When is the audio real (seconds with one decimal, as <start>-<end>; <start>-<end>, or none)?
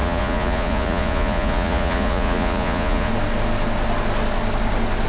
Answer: 3.1-5.1